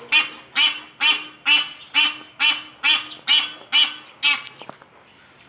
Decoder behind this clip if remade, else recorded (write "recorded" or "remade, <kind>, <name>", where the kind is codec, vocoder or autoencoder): recorded